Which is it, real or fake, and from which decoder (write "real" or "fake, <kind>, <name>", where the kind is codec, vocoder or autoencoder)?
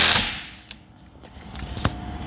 real